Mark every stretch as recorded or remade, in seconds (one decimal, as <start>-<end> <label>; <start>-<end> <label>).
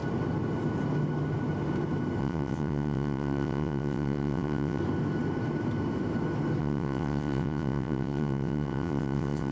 0.0-2.2 recorded; 2.2-4.8 remade; 4.8-6.6 recorded; 6.6-9.5 remade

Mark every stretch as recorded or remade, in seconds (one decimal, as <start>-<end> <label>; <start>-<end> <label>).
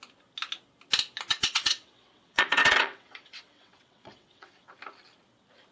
0.0-1.3 recorded; 1.3-4.7 remade; 4.7-5.7 recorded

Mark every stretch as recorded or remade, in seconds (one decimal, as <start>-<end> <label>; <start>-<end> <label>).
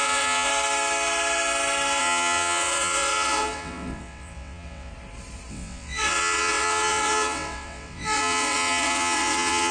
0.0-0.5 remade; 0.5-2.0 recorded; 2.0-4.9 remade; 4.9-5.5 recorded; 5.5-9.7 remade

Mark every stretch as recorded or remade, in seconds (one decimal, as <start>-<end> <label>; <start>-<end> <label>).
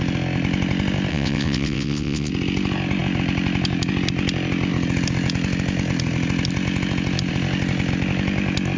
0.0-1.1 recorded; 1.1-2.3 remade; 2.3-8.8 recorded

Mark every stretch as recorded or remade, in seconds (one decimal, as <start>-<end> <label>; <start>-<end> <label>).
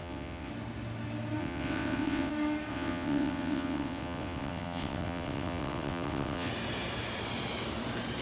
0.0-0.5 remade; 0.5-1.4 recorded; 1.4-2.3 remade; 2.3-2.7 recorded; 2.7-6.5 remade; 6.5-8.2 recorded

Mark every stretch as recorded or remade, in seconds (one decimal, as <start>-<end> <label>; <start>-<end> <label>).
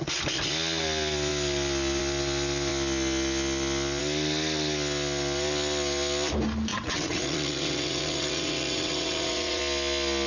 0.0-6.7 recorded; 6.7-9.6 remade; 9.6-10.3 recorded